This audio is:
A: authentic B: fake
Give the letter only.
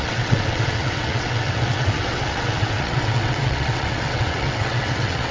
B